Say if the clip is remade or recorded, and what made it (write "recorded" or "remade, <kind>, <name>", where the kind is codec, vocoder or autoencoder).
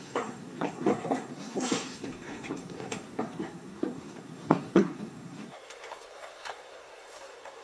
remade, codec, SNAC